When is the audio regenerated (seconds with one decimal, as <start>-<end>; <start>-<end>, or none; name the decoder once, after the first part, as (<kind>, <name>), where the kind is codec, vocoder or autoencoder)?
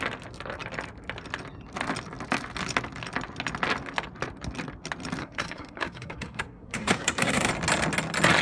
5.2-7.5 (codec, SNAC)